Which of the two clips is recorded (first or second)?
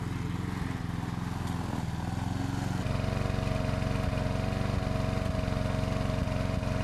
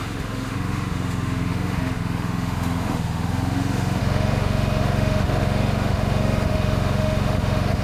first